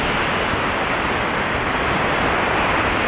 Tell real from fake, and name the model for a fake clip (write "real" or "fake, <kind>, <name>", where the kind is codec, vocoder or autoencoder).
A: real